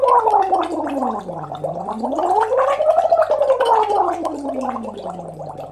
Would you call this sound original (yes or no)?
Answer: yes